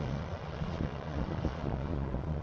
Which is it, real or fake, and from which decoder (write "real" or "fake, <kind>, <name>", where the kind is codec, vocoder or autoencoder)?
fake, vocoder, Vocos